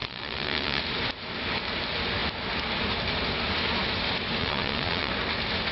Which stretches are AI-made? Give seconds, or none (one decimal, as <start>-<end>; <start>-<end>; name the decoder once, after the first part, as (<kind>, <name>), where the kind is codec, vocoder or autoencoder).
0.0-0.8 (vocoder, Vocos); 4.4-5.1